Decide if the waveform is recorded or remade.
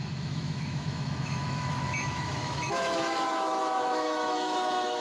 remade